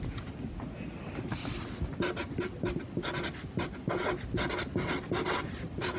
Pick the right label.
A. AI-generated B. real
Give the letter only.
B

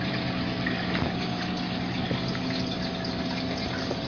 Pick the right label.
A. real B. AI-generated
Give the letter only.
A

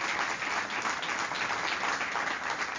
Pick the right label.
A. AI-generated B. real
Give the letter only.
B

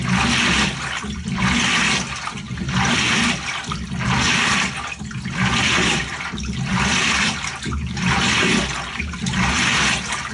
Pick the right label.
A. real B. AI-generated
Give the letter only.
A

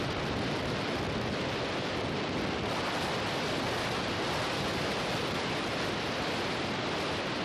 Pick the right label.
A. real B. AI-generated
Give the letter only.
A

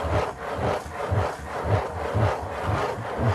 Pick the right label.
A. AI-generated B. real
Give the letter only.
B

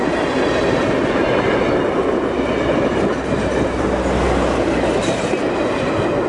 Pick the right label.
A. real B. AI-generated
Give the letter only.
A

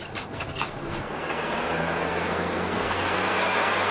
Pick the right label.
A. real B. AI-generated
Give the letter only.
B